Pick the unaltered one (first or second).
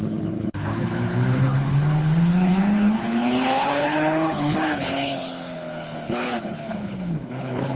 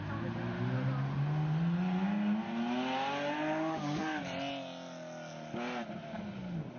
second